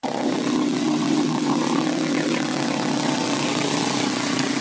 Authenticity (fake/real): fake